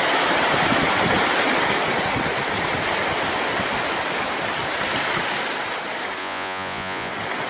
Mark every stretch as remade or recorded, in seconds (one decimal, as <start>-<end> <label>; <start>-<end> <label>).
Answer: 0.0-6.2 recorded; 6.2-7.1 remade; 7.1-7.5 recorded